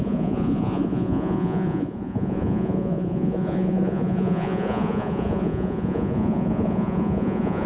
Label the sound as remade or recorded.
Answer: remade